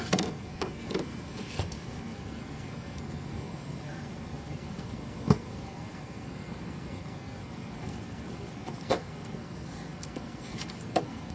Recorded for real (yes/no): no